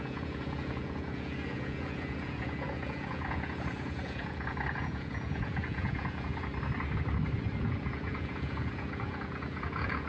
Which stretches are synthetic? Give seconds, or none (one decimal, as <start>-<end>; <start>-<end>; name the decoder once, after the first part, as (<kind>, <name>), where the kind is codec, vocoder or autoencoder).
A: 0.0-6.5 (vocoder, Vocos); 7.6-10.1